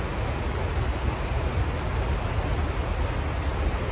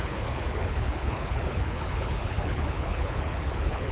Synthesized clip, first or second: second